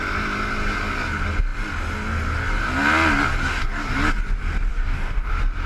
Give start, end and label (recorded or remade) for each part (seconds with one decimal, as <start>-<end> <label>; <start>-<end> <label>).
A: 0.0-3.4 recorded; 3.4-3.9 remade; 3.9-4.7 recorded; 4.7-5.3 remade; 5.3-5.7 recorded